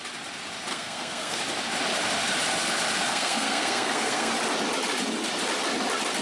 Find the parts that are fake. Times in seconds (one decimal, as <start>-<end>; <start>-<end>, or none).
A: 0.7-1.4; 3.1-4.3